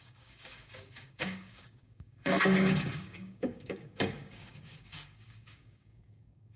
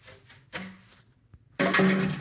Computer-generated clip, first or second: first